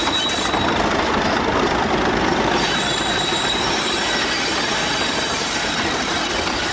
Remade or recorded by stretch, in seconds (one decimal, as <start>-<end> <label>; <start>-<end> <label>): 0.0-4.0 remade; 4.0-6.7 recorded